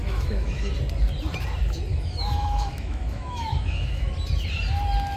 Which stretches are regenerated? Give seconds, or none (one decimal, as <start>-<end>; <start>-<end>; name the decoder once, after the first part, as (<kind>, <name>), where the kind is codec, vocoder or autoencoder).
0.0-0.7 (autoencoder, DAC-VAE); 1.9-4.1